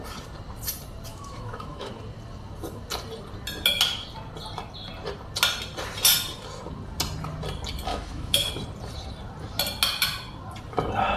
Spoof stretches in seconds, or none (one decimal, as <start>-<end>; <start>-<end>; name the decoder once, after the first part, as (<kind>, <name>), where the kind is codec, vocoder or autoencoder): 1.1-1.9 (autoencoder, DAC-VAE); 7.9-8.5